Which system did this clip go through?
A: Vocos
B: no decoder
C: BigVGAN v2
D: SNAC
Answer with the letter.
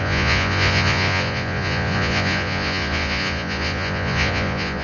A